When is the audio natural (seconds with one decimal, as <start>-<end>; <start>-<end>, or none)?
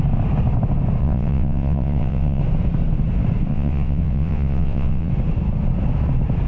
0.0-1.0; 2.4-3.5; 5.1-6.5